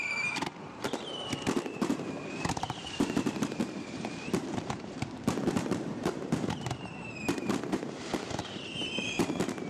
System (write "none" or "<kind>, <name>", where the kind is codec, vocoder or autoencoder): vocoder, BigVGAN v2